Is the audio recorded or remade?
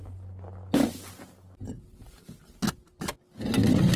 recorded